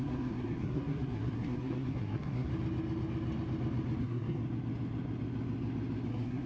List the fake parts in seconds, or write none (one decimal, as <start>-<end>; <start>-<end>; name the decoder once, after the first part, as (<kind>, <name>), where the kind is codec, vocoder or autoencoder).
0.0-2.5 (codec, SNAC); 4.0-4.4; 6.1-6.5